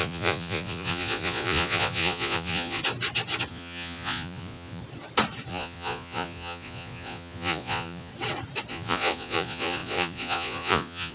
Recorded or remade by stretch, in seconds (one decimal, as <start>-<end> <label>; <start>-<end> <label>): 0.0-2.8 remade; 2.8-3.5 recorded; 3.5-4.8 remade; 4.8-5.5 recorded; 5.5-8.1 remade; 8.1-8.7 recorded; 8.7-11.1 remade